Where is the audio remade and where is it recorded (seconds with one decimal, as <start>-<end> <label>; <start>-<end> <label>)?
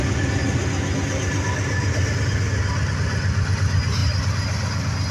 0.0-5.1 recorded